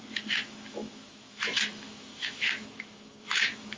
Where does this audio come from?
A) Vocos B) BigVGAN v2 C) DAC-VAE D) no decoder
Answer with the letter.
C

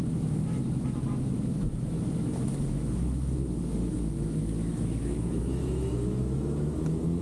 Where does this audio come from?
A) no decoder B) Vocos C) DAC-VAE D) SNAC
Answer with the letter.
C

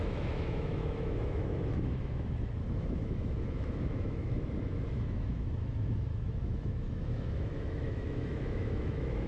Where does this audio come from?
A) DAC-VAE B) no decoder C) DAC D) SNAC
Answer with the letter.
A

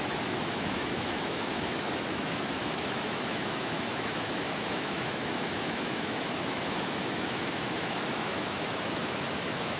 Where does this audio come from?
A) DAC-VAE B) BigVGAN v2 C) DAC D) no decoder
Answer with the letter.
A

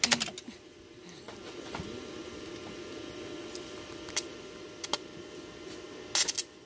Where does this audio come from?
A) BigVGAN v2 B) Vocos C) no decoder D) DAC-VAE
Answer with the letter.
C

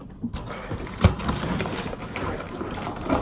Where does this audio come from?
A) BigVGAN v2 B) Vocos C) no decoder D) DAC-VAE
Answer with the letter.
C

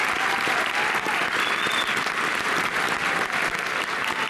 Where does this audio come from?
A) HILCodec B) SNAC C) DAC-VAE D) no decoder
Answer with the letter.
D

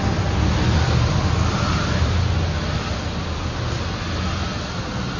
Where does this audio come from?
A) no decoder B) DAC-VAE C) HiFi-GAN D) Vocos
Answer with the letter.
A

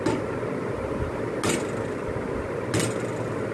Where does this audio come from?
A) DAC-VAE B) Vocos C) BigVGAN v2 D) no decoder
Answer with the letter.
D